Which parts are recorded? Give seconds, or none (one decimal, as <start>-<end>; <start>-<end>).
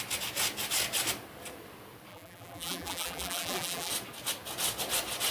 0.0-2.1; 3.9-5.3